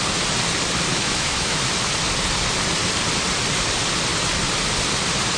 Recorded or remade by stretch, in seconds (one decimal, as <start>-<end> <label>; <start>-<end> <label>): 0.0-0.9 recorded; 0.9-1.6 remade; 1.6-5.4 recorded